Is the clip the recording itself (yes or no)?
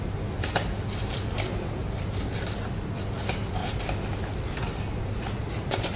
yes